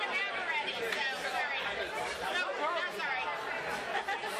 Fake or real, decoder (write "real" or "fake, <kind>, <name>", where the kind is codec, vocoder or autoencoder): real